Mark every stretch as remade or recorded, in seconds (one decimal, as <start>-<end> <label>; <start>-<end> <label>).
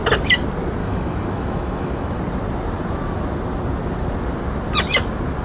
0.0-0.8 recorded; 0.8-2.2 remade; 2.2-5.4 recorded